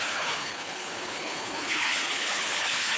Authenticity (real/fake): fake